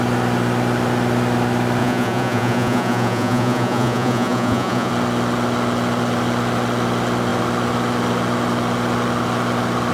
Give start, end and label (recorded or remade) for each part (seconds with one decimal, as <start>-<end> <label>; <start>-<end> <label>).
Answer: 0.0-1.8 recorded; 1.8-4.9 remade; 4.9-9.9 recorded